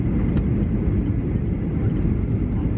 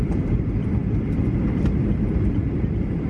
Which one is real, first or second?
first